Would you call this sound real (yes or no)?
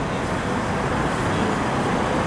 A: yes